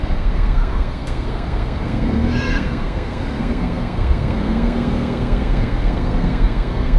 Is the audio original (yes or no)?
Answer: no